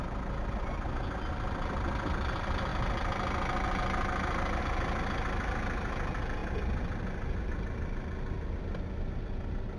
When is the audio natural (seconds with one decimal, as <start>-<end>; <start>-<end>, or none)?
0.0-9.8